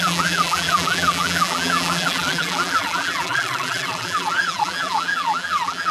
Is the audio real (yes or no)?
no